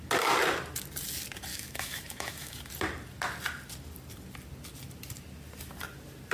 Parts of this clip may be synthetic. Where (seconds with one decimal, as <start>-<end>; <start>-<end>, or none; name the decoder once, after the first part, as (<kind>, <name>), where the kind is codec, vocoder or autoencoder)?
1.5-2.7 (autoencoder, DAC-VAE)